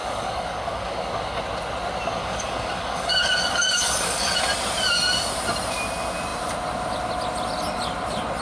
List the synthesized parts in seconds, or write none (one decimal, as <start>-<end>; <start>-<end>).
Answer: 0.0-1.4; 2.2-4.3